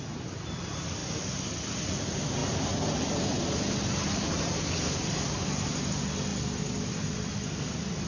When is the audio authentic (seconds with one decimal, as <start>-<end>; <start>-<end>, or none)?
0.0-8.1